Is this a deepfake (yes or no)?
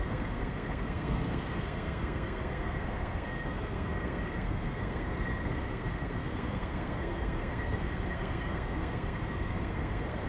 yes